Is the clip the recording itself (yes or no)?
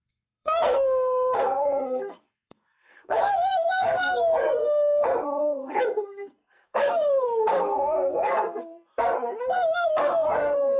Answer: no